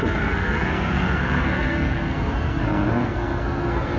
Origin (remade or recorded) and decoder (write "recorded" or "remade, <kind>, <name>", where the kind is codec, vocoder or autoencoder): remade, codec, SNAC